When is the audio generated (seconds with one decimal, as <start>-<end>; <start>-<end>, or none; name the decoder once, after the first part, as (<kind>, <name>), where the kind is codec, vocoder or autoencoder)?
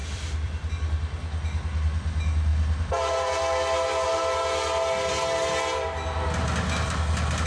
0.0-0.7 (vocoder, BigVGAN v2)